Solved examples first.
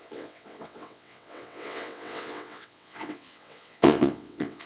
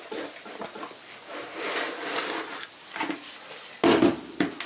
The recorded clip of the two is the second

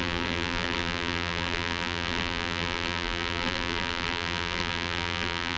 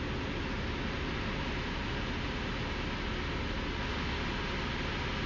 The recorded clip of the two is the second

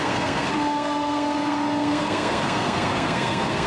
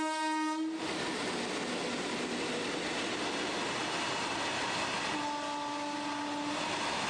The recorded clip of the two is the second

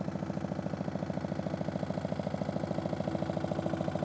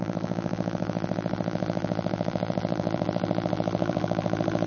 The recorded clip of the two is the first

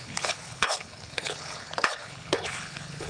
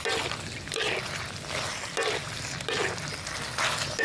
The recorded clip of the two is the second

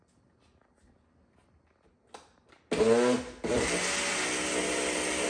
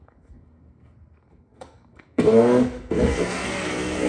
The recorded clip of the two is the first